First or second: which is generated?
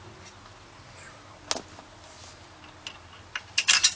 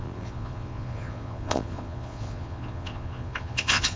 second